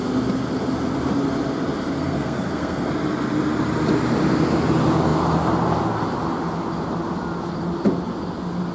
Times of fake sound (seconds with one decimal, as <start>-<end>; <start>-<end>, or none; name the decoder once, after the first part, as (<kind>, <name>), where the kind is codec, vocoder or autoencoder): 2.0-2.9 (codec, SNAC)